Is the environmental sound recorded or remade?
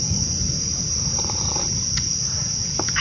recorded